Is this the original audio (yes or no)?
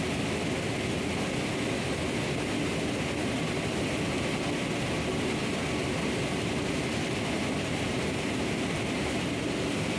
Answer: yes